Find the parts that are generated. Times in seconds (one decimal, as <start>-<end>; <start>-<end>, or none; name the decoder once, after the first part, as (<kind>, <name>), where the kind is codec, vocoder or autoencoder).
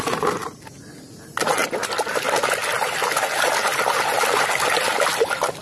none